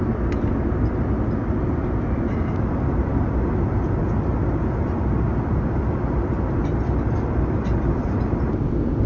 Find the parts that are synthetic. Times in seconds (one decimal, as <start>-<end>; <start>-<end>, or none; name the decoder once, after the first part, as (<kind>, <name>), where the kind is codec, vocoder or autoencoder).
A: none

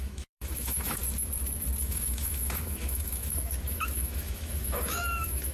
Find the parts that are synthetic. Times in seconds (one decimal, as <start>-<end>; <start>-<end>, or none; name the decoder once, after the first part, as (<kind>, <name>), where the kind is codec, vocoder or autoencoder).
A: 0.0-1.0 (autoencoder, DAC-VAE); 1.8-5.5

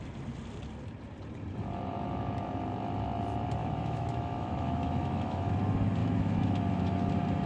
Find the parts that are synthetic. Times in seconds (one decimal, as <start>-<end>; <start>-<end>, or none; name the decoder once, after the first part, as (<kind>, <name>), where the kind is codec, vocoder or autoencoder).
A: 3.6-5.5 (autoencoder, DAC-VAE); 6.0-6.6

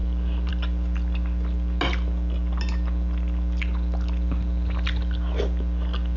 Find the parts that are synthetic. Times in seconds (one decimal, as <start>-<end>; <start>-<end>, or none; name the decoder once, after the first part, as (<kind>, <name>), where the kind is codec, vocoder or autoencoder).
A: none

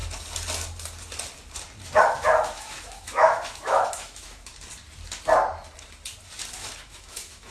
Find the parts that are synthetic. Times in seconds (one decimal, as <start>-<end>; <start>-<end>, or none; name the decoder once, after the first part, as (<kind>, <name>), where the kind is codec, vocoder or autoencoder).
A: 2.0-4.5 (autoencoder, DAC-VAE); 6.5-7.5

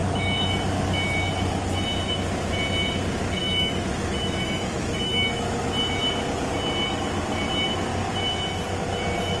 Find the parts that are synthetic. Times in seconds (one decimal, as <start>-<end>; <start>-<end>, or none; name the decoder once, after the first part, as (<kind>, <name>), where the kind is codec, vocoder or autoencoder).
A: 0.0-0.6 (autoencoder, DAC-VAE); 3.4-5.6